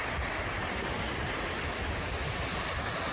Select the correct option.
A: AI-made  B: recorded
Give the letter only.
B